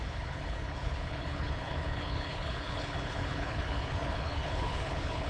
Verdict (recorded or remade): remade